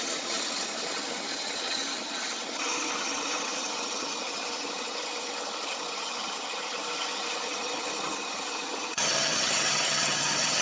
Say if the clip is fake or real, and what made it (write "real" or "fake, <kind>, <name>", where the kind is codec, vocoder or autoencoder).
fake, vocoder, HiFi-GAN